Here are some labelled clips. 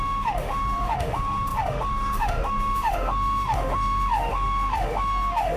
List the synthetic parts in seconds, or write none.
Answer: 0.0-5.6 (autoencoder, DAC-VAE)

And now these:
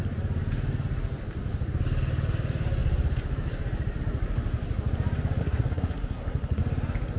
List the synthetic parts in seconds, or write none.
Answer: 5.4-6.6 (codec, SNAC)

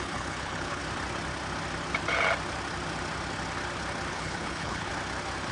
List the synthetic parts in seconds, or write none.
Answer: 0.0-0.8 (codec, HILCodec); 4.1-4.9

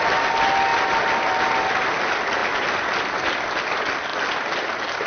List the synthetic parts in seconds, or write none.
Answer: none

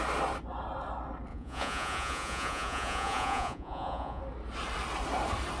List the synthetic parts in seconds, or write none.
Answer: 1.3-4.2 (vocoder, Vocos)

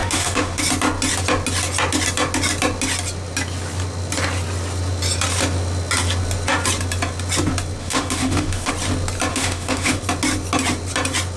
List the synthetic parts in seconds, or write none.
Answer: 0.0-0.6 (autoencoder, DAC-VAE); 7.8-8.7; 9.3-10.0

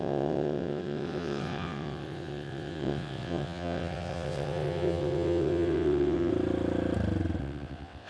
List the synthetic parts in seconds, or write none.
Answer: 0.0-6.3 (vocoder, WaveNeXt); 7.4-8.1

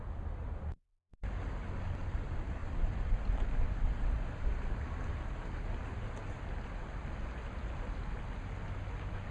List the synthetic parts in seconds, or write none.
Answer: none